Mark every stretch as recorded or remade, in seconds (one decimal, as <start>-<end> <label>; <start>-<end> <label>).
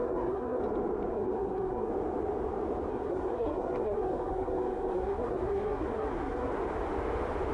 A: 0.0-0.6 remade; 0.6-1.1 recorded; 1.1-1.9 remade; 1.9-2.9 recorded; 2.9-6.5 remade; 6.5-7.5 recorded